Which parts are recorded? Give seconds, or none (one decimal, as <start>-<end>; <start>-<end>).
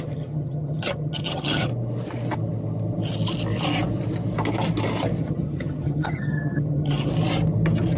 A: 1.7-5.2; 7.1-8.0